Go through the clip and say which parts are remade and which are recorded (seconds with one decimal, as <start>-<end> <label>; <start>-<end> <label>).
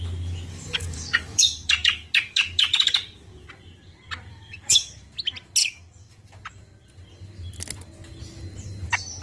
0.0-0.5 recorded; 0.5-3.5 remade; 3.5-4.3 recorded; 4.3-5.0 remade; 5.0-5.6 recorded; 5.6-6.3 remade; 6.3-9.2 recorded